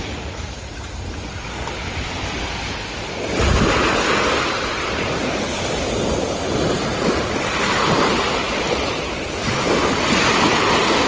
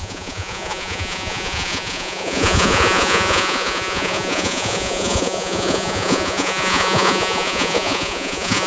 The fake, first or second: second